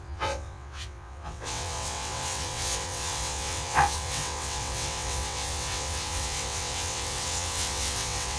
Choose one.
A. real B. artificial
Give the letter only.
B